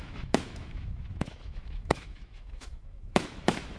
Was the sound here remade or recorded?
remade